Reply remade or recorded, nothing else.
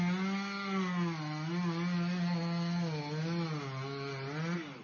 recorded